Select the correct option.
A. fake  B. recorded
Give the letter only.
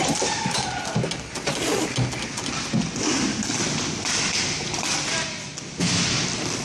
B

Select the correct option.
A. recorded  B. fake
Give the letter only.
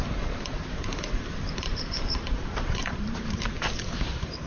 B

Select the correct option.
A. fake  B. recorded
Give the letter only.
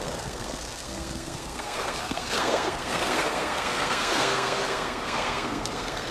A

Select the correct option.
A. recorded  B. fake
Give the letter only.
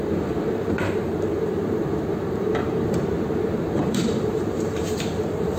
B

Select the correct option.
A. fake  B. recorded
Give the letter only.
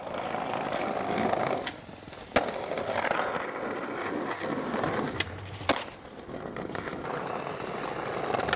B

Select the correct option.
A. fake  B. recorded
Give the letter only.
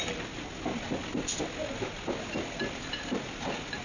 B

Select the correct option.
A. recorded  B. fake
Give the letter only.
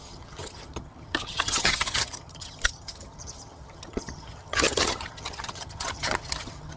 B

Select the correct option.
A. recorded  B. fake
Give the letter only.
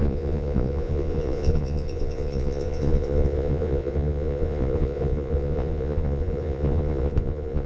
B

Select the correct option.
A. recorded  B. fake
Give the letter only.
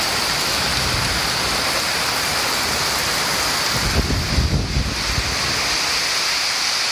A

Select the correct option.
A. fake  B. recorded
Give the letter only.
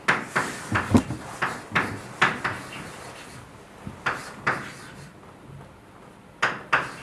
B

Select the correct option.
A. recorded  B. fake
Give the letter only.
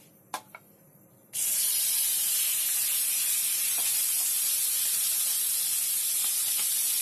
A